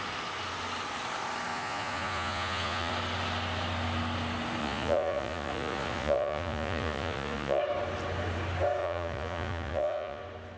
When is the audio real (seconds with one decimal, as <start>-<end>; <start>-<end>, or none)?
0.0-1.5; 2.9-4.6; 7.6-8.8; 10.2-10.6